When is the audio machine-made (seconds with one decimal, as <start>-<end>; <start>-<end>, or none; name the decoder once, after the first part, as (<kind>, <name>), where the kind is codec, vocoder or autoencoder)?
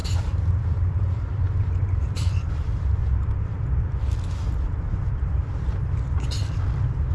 0.0-3.0 (vocoder, BigVGAN v2); 4.7-7.1